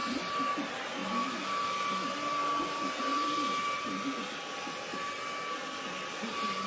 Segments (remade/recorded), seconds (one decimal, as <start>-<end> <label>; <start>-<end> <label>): 0.0-6.7 recorded